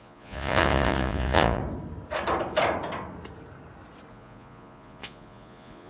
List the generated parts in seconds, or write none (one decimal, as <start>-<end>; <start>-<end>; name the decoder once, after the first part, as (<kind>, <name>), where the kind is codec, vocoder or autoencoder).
0.0-1.6 (vocoder, Vocos); 4.1-5.9